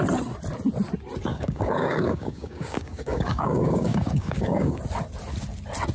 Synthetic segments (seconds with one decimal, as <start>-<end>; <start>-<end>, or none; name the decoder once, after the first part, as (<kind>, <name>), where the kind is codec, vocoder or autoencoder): 1.3-4.8 (codec, DAC)